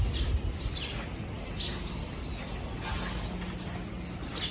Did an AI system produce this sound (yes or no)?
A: no